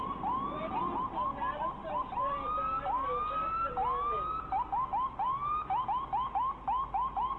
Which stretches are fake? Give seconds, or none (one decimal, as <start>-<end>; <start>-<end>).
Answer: none